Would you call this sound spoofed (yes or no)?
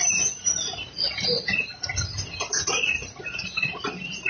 no